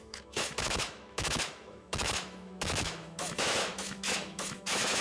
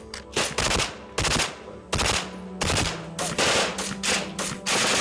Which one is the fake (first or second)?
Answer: first